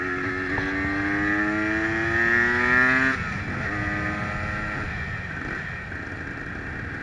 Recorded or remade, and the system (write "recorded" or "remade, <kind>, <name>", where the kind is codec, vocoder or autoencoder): recorded